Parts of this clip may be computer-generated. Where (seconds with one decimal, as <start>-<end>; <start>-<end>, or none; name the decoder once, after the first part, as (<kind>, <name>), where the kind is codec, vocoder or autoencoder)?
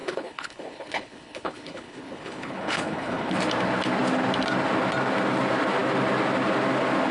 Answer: 0.0-3.3 (codec, HILCodec)